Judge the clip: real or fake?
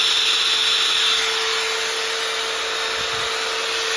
real